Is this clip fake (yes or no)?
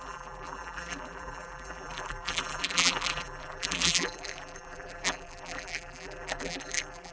yes